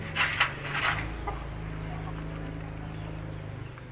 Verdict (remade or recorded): recorded